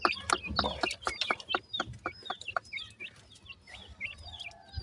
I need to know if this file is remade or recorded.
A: recorded